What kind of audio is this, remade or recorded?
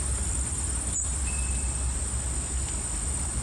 recorded